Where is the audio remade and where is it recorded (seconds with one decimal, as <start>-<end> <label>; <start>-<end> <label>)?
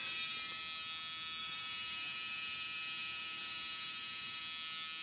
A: 0.0-0.6 remade; 0.6-1.4 recorded; 1.4-4.4 remade; 4.4-5.0 recorded